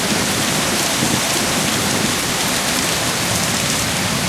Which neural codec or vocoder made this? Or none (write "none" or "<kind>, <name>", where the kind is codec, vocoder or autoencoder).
none